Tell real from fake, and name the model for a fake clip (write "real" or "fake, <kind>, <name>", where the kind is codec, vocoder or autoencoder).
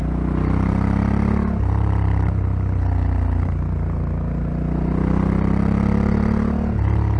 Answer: real